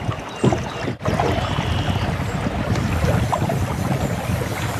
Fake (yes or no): no